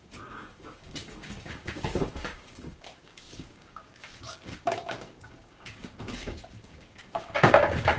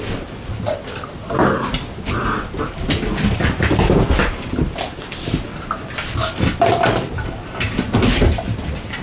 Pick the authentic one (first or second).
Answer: second